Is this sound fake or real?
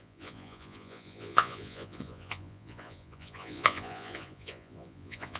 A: fake